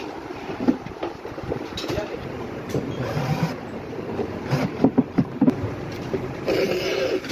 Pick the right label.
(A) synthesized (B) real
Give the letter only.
A